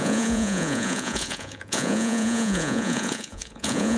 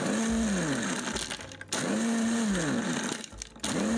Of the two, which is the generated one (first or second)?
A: first